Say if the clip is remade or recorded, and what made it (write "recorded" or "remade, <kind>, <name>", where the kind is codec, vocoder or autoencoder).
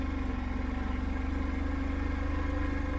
recorded